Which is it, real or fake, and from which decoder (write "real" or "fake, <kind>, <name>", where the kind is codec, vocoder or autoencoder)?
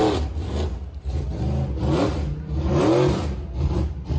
real